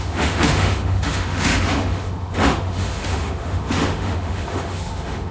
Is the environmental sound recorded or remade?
remade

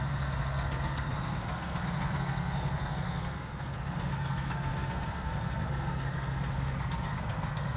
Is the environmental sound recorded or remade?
remade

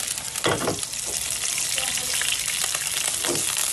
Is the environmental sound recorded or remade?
recorded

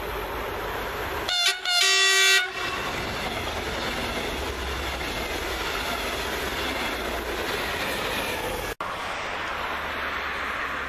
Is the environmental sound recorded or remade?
recorded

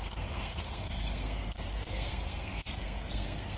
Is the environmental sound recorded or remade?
remade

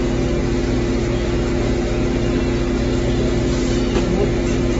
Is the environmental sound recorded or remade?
recorded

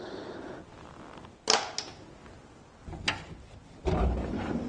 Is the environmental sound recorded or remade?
recorded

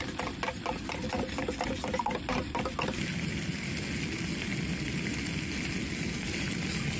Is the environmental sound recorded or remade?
recorded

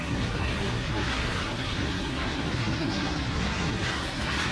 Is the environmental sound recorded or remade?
remade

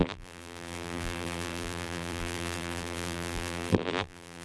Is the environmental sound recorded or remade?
remade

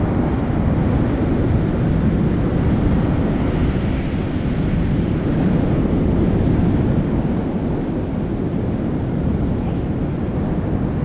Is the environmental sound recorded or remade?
recorded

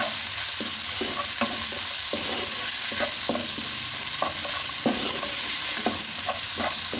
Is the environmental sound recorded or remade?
recorded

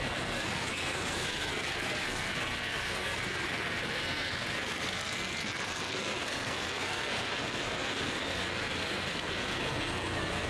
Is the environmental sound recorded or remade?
remade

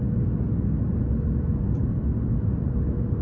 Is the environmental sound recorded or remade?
recorded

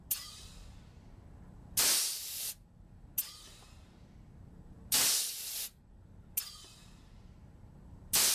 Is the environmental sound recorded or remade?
recorded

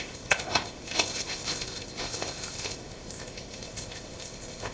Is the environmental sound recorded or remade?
remade